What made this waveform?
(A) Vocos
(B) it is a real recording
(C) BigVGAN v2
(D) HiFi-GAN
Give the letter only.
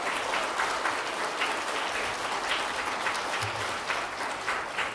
B